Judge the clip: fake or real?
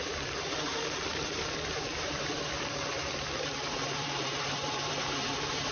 fake